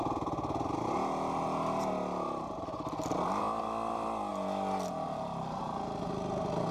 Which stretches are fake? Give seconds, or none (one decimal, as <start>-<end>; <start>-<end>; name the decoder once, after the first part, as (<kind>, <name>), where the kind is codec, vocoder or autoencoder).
none